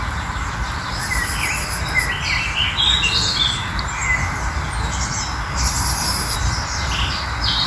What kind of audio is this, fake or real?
real